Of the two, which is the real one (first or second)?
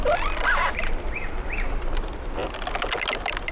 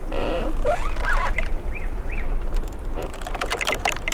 first